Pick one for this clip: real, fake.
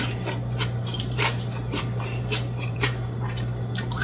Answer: fake